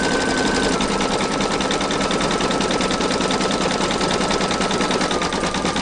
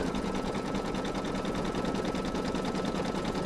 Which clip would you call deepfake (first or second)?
second